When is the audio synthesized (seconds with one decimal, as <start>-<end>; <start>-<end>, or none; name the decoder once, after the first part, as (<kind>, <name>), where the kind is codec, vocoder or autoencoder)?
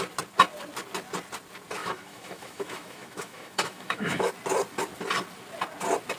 1.8-4.3 (autoencoder, DAC-VAE)